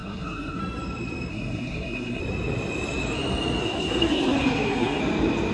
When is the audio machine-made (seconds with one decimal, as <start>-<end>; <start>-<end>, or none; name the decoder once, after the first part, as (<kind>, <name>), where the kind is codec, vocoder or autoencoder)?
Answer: 0.0-0.6 (codec, SNAC); 1.3-2.2; 3.6-5.0